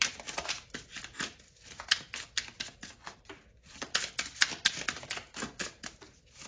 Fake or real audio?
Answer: real